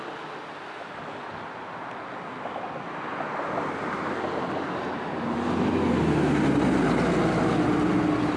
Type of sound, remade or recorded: recorded